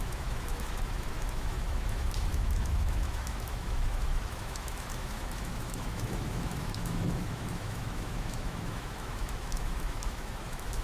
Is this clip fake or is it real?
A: fake